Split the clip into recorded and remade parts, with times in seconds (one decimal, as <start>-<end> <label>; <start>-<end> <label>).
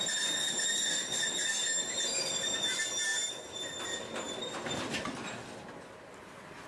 0.0-6.7 recorded